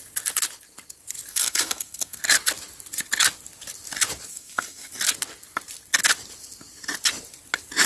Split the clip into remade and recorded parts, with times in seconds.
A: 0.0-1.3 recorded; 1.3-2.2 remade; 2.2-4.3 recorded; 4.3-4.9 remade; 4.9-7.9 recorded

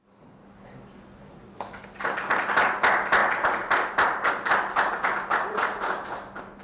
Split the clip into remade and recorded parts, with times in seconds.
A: 0.0-6.6 recorded

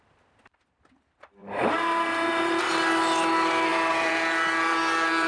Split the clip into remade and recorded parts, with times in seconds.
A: 0.0-1.4 recorded; 1.4-2.6 remade; 2.6-3.7 recorded; 3.7-5.3 remade

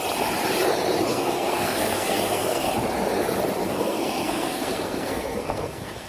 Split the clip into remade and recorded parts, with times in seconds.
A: 0.0-1.1 recorded; 1.1-2.7 remade; 2.7-3.6 recorded; 3.6-6.1 remade